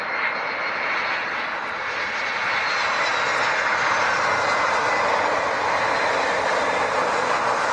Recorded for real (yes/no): yes